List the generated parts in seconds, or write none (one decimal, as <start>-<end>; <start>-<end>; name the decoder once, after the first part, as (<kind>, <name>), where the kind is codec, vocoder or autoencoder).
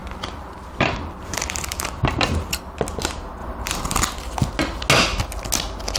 0.0-2.6 (vocoder, BigVGAN v2); 3.4-4.0